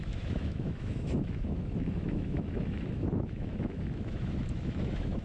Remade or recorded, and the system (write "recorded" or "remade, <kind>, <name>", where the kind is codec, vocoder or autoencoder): remade, autoencoder, DAC-VAE